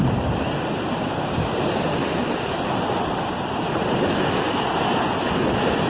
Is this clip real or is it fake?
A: real